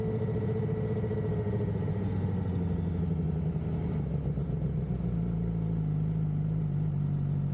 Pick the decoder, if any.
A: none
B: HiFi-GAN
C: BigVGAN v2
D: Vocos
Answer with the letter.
A